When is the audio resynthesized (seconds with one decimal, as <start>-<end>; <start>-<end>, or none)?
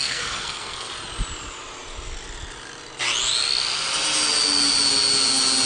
0.0-0.9